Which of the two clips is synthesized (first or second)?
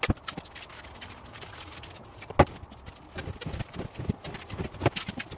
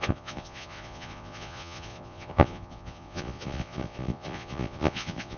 second